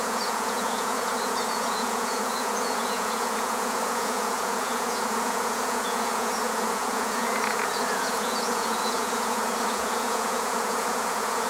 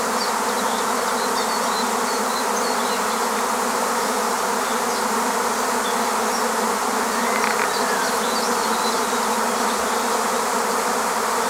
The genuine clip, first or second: second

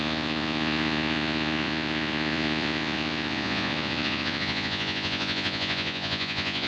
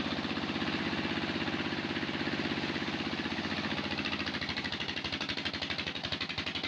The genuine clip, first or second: second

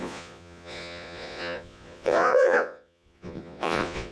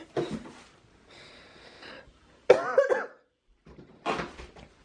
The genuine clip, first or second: second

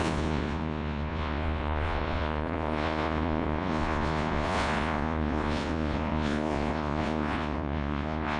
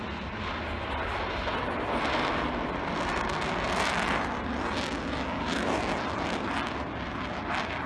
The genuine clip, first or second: second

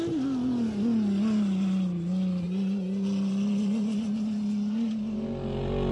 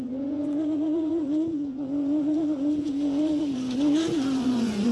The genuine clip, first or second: first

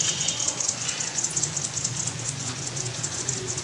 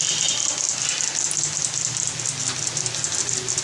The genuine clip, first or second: second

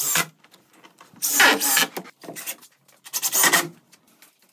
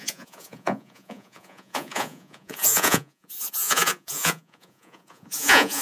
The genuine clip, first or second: first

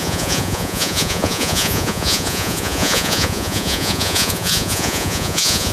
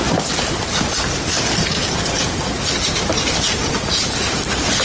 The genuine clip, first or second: second